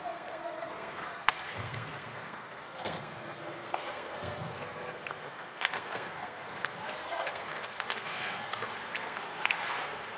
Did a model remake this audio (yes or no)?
yes